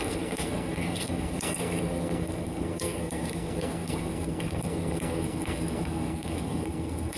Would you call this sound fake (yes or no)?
yes